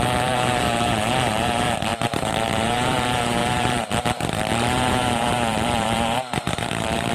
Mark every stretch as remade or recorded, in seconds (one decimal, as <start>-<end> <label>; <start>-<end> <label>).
0.0-7.1 remade